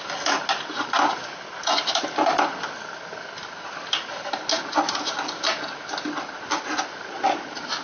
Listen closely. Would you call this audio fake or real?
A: real